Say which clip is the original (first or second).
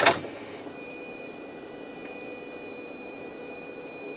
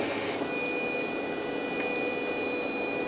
second